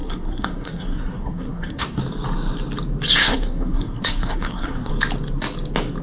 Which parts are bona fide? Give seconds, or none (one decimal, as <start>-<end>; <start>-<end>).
2.0-3.2; 4.9-6.0